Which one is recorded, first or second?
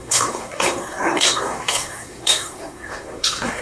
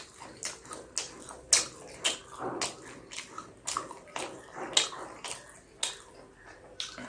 second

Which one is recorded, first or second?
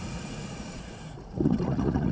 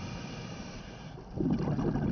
second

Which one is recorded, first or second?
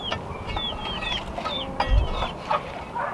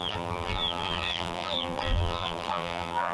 first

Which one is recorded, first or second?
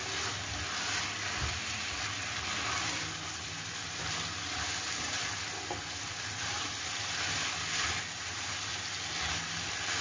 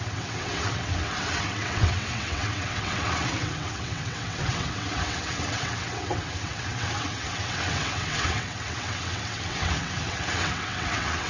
first